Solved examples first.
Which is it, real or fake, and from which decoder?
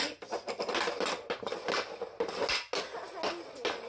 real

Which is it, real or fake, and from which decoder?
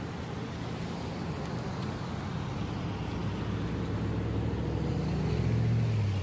real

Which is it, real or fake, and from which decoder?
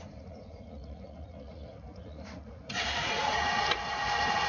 fake, vocoder, Vocos